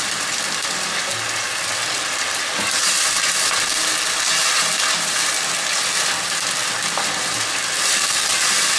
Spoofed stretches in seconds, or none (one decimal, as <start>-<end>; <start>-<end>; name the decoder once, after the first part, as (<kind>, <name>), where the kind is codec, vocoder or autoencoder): none